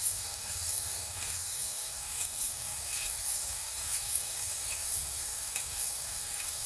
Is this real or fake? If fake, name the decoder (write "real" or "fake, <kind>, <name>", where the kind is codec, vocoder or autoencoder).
fake, codec, DAC